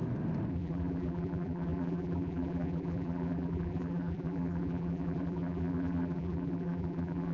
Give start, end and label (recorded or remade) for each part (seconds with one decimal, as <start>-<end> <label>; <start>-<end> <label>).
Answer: 0.0-0.5 recorded; 0.5-7.3 remade